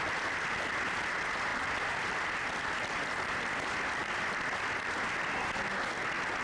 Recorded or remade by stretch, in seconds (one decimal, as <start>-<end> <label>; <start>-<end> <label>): 0.0-6.4 recorded